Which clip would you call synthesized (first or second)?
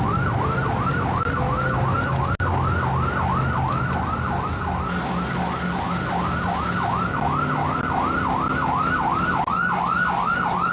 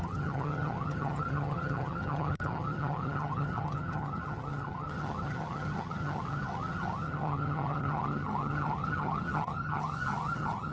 second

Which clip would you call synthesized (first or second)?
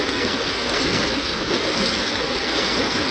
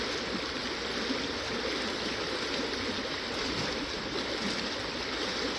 first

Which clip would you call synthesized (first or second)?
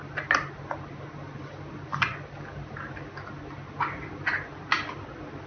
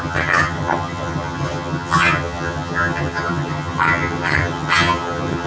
second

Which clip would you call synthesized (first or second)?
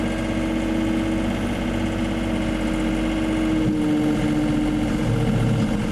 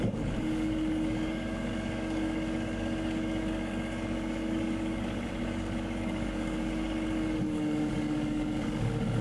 second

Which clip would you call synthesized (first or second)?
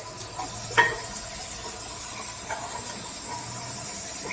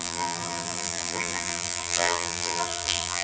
second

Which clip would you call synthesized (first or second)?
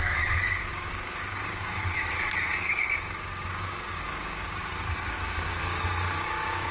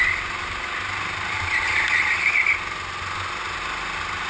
first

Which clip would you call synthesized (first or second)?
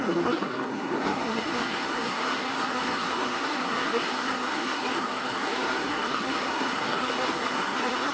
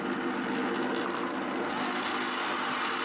first